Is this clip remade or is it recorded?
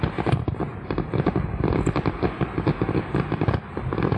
recorded